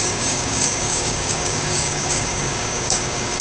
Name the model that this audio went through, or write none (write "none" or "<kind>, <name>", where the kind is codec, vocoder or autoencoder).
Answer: codec, DAC